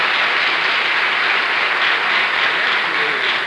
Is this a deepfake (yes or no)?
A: no